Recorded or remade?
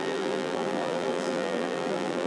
remade